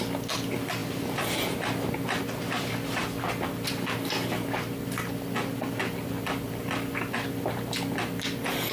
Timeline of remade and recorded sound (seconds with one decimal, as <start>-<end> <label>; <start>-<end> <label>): 0.0-8.7 recorded